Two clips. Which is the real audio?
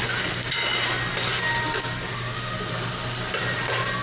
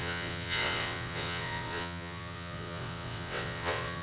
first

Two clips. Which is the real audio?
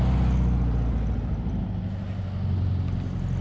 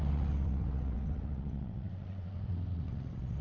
first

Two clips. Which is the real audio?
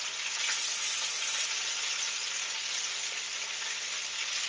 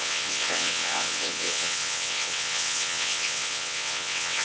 first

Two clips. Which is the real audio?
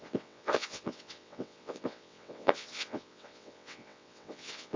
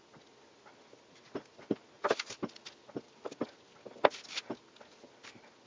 second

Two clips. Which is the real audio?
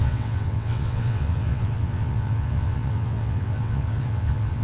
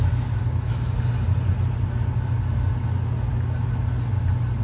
second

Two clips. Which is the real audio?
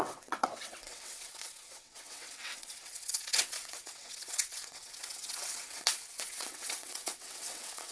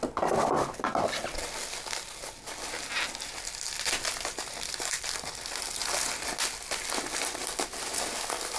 second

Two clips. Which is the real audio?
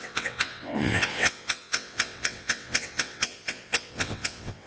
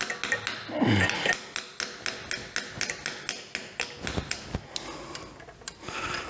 second